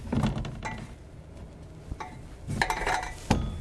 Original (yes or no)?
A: yes